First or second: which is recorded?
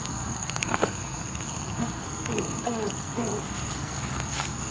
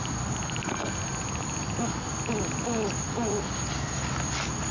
second